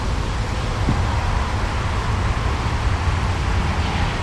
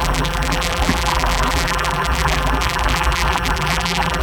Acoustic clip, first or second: first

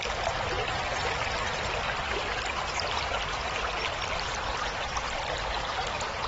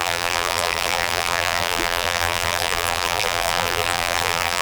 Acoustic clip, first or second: first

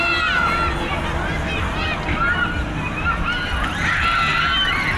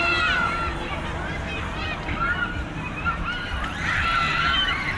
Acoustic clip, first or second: first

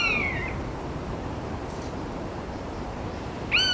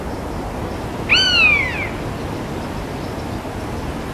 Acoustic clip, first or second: second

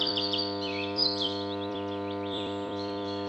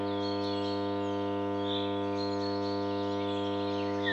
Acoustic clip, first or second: second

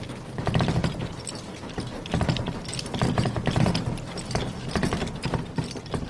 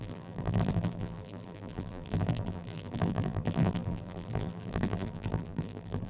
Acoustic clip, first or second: first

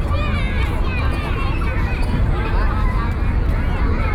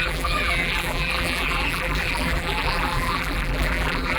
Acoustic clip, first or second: first